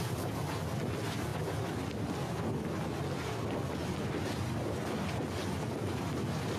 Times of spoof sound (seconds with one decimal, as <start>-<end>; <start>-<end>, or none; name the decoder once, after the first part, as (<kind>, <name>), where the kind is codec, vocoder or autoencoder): none